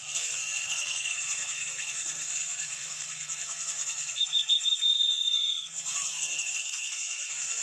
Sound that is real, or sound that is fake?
fake